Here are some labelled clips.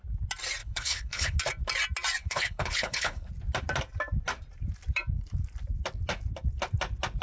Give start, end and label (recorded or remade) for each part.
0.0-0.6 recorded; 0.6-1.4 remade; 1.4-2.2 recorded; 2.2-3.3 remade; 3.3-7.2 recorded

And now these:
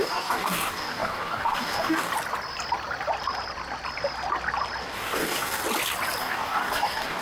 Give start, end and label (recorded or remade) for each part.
0.0-2.1 remade; 2.1-4.8 recorded; 4.8-5.6 remade; 5.6-6.2 recorded; 6.2-7.2 remade

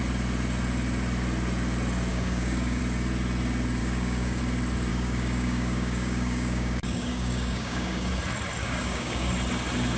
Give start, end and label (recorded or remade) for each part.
0.0-2.1 recorded; 2.1-2.8 remade; 2.8-3.8 recorded; 3.8-4.4 remade; 4.4-4.9 recorded; 4.9-8.1 remade; 8.1-8.6 recorded; 8.6-9.3 remade; 9.3-10.0 recorded

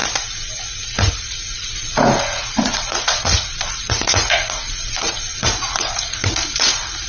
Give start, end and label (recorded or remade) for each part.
0.0-7.1 remade

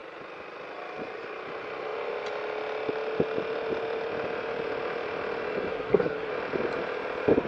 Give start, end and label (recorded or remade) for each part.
0.0-5.7 recorded; 5.7-6.3 remade; 6.3-7.5 recorded

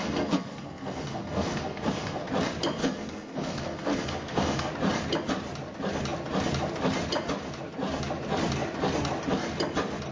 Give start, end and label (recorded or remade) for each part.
0.0-2.3 remade; 2.3-2.8 recorded; 2.8-4.7 remade; 4.7-10.1 recorded

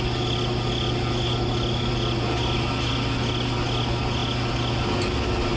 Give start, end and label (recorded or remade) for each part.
0.0-5.6 recorded